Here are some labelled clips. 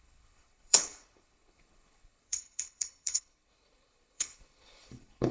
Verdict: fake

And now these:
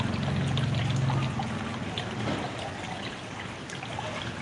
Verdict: real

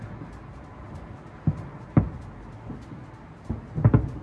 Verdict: real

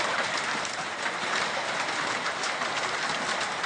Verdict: real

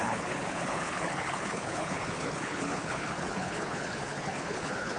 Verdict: fake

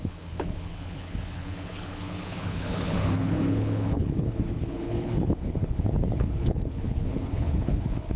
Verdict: fake